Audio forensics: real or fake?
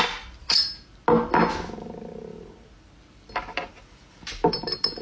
real